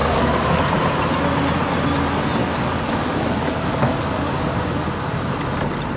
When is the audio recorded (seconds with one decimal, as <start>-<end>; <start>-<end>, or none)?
0.6-2.4; 4.6-6.0